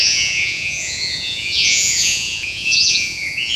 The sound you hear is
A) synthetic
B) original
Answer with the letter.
A